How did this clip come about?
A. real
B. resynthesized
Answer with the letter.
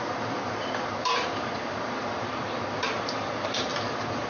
B